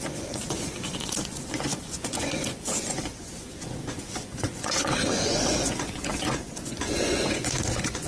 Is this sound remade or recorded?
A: remade